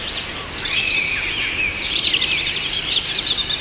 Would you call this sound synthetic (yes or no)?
no